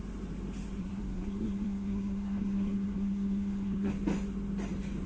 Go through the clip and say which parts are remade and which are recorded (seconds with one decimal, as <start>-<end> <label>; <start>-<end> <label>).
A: 0.0-0.8 recorded; 0.8-3.9 remade; 3.9-5.1 recorded